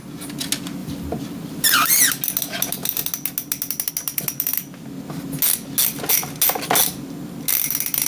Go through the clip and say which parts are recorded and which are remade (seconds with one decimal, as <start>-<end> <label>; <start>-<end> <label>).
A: 0.0-0.8 recorded; 0.8-1.9 remade; 1.9-8.1 recorded